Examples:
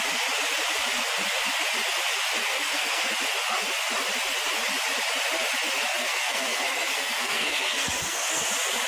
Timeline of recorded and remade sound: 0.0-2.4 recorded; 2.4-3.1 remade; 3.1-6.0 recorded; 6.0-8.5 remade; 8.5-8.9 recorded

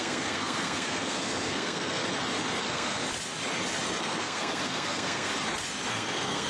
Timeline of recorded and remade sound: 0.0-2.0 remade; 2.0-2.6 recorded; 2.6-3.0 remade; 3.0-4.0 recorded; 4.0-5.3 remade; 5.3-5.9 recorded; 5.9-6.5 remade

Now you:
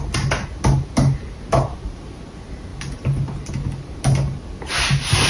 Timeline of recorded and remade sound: 0.0-5.3 recorded